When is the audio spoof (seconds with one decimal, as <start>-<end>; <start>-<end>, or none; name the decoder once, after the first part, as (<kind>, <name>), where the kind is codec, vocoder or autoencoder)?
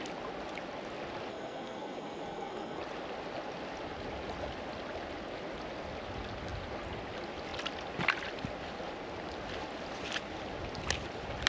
1.3-2.8 (codec, SNAC)